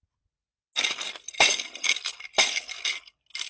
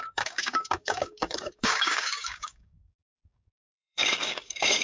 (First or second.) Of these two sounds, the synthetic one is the second